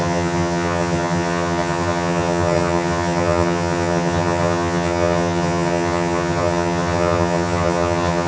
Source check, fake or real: fake